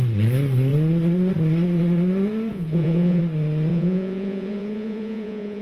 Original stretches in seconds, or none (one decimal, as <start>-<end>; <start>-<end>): 0.0-2.5; 3.2-3.7